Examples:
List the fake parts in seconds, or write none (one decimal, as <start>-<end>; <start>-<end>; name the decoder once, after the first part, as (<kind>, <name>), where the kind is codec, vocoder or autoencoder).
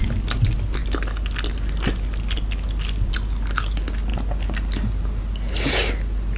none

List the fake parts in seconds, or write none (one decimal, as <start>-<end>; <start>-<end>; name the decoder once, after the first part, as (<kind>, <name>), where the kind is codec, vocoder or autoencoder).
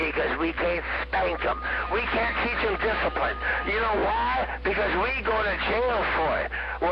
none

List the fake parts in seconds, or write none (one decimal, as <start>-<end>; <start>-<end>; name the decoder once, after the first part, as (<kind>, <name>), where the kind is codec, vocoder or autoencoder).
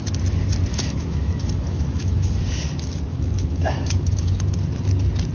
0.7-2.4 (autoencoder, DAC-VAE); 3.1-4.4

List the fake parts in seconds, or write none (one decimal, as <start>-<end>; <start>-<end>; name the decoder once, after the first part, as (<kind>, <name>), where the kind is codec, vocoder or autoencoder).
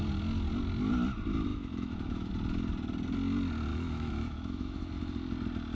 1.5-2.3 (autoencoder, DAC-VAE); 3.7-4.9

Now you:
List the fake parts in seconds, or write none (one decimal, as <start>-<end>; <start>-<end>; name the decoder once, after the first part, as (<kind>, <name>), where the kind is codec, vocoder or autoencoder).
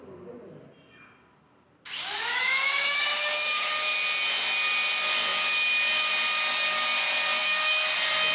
2.3-3.7 (autoencoder, DAC-VAE)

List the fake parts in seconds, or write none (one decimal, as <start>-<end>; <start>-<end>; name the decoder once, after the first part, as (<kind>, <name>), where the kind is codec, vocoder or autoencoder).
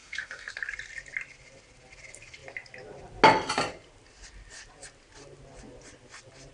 0.0-0.5 (autoencoder, DAC-VAE)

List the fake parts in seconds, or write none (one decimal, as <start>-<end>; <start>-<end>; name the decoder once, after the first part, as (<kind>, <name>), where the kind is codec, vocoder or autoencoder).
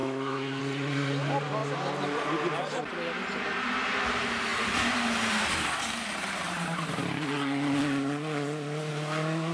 0.0-0.6 (autoencoder, DAC-VAE)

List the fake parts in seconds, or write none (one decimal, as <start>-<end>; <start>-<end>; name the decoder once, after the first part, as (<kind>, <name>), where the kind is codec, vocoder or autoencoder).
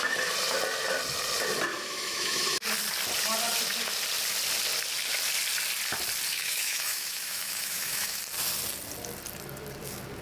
1.7-2.6 (autoencoder, DAC-VAE); 6.3-8.2